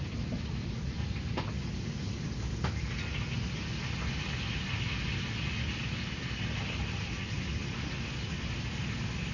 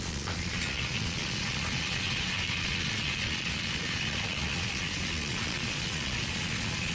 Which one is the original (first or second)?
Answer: first